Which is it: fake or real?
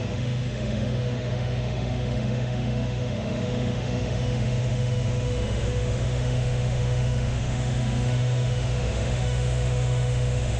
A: fake